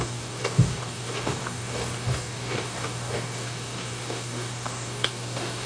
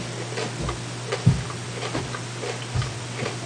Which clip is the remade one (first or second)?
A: first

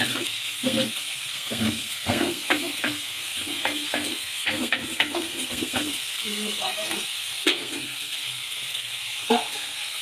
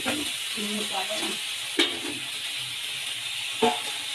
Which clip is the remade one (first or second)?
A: first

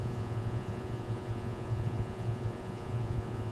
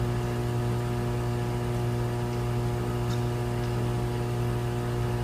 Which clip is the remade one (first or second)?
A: first